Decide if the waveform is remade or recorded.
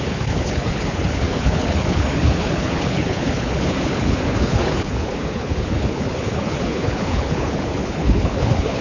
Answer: remade